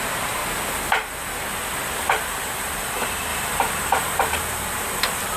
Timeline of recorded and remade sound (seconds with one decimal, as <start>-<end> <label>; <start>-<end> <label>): 0.0-0.4 remade; 0.4-2.4 recorded; 2.4-5.4 remade